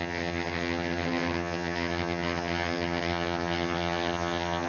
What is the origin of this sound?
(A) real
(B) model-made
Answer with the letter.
B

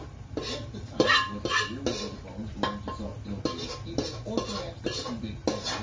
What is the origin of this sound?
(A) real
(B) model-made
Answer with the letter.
A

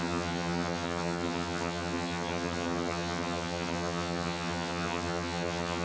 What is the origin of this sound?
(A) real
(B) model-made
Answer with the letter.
B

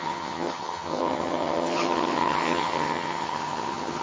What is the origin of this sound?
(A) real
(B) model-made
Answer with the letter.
B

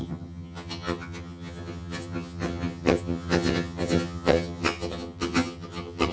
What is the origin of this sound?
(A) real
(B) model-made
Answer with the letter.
B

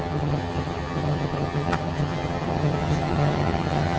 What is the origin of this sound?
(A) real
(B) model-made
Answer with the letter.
B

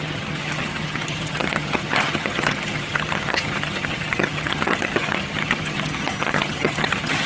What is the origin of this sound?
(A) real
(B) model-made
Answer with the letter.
B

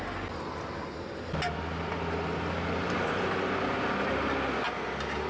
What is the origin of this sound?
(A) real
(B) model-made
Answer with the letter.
A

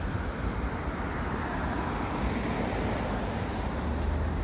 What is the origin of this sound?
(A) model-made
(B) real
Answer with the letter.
B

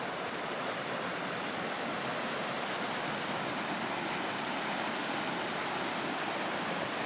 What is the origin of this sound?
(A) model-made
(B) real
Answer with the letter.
B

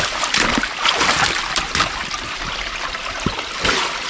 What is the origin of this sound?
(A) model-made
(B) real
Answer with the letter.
B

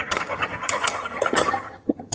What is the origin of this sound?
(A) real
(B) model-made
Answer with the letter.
B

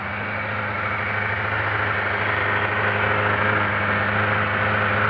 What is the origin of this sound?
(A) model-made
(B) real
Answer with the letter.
B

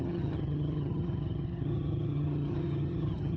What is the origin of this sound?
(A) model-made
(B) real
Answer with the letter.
A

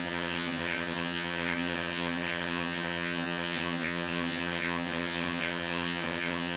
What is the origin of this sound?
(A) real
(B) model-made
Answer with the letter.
B